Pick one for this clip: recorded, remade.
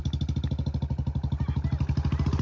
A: recorded